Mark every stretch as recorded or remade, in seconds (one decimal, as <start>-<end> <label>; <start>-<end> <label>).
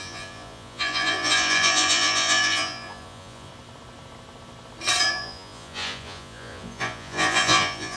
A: 0.0-3.5 remade; 3.5-5.1 recorded; 5.1-8.0 remade